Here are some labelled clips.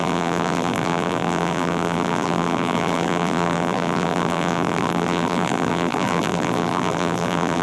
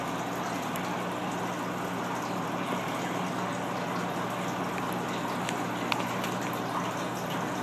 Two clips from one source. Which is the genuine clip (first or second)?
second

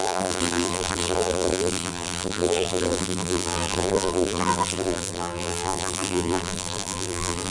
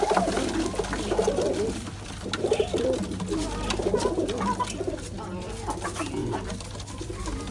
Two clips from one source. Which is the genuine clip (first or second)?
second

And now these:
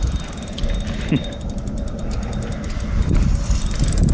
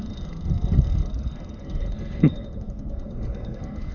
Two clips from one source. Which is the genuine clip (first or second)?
first